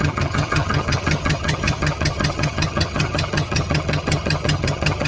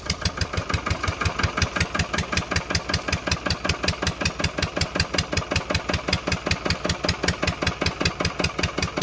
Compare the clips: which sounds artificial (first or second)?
first